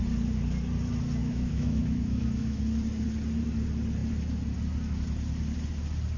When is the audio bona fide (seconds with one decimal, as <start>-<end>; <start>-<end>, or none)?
0.0-1.2; 2.6-6.2